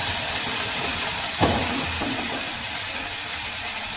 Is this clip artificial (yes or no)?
yes